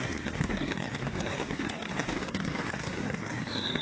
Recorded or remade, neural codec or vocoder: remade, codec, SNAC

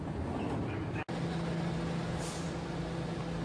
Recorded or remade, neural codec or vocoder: recorded